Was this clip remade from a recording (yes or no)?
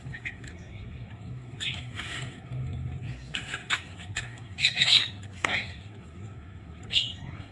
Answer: yes